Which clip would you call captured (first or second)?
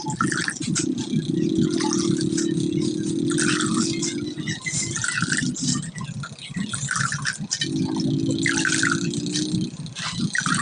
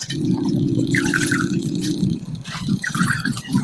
first